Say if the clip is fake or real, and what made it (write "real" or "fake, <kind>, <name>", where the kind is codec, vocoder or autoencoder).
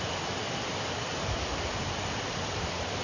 real